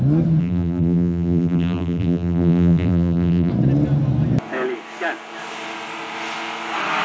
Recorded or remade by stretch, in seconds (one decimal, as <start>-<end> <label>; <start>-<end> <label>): 0.0-0.4 recorded; 0.4-3.5 remade; 3.5-7.0 recorded

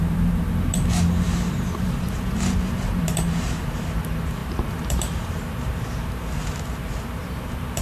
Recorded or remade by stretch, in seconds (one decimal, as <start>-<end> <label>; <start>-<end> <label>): 0.0-7.8 remade